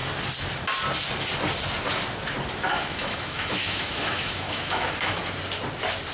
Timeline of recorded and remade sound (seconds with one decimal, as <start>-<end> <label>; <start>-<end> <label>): 0.0-2.7 recorded; 2.7-5.2 remade; 5.2-6.1 recorded